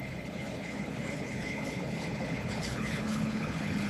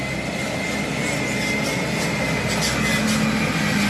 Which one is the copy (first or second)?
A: first